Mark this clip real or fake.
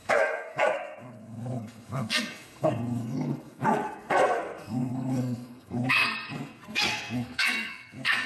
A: fake